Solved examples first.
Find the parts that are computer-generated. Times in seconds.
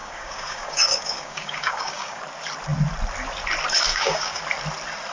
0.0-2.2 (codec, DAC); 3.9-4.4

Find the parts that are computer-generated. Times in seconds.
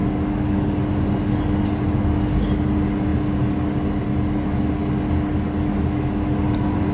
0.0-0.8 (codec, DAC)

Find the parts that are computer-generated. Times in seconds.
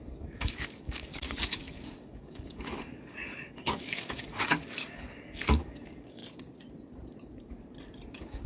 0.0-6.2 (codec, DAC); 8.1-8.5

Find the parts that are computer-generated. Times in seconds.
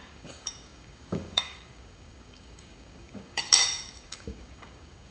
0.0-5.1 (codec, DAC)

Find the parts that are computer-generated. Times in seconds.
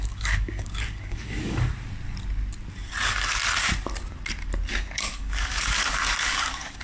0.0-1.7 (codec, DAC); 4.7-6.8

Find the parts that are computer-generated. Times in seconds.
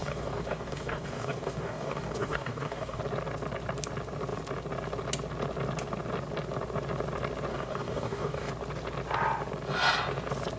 0.0-3.0 (codec, DAC); 7.5-8.5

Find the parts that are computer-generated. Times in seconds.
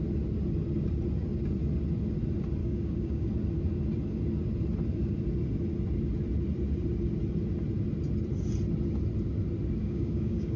2.6-3.3 (codec, DAC); 9.8-10.6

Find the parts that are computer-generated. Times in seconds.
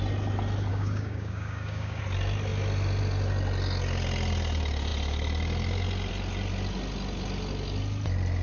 0.7-2.0 (codec, DAC)